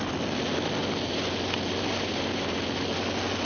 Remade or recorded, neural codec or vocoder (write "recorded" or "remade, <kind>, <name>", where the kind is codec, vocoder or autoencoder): recorded